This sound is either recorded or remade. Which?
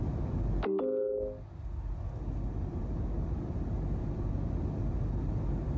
recorded